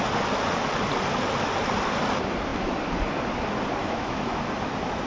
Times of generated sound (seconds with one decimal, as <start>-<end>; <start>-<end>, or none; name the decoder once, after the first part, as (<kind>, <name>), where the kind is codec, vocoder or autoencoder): 3.8-4.4 (autoencoder, DAC-VAE)